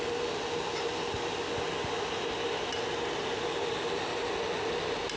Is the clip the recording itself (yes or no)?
yes